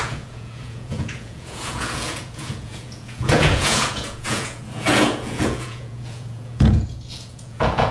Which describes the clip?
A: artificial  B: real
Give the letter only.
A